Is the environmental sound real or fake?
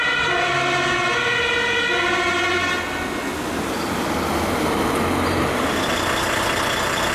real